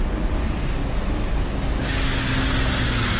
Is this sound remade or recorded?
recorded